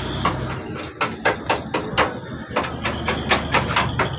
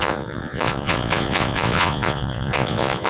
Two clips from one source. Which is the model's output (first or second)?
second